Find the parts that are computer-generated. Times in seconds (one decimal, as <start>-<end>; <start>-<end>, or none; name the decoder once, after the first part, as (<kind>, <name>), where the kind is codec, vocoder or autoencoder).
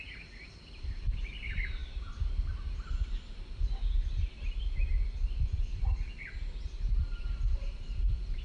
0.0-3.7 (vocoder, BigVGAN v2); 7.2-8.4